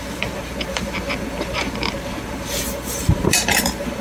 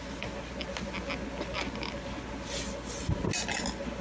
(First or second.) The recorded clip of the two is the second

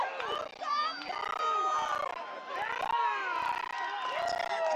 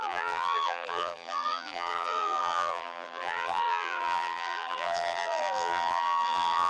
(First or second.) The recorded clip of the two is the first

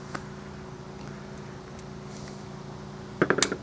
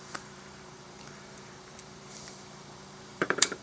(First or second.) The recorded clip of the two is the first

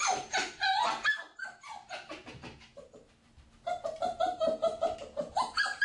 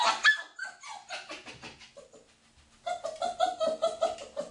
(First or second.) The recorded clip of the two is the second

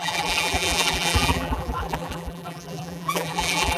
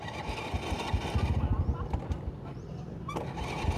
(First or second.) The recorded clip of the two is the second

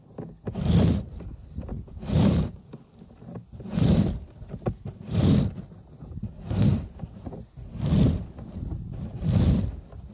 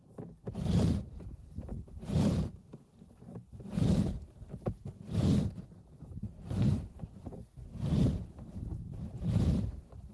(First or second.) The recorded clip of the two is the first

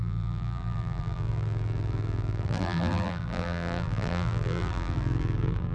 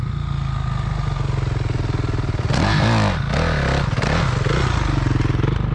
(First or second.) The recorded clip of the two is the second